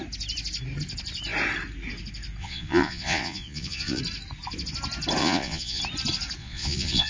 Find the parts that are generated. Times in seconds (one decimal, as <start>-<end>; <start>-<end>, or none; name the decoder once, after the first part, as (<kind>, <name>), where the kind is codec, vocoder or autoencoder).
2.4-4.0 (vocoder, Vocos); 5.2-5.8; 6.4-7.1